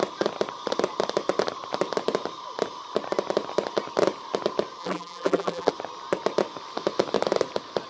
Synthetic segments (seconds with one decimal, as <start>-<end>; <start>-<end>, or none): 4.8-5.7

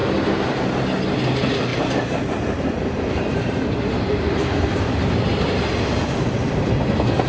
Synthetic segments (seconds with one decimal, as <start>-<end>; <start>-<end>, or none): 1.7-5.1

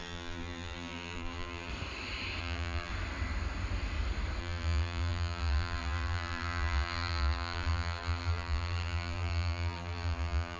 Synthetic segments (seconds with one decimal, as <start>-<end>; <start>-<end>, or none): 0.0-1.7; 2.4-2.9; 4.4-10.6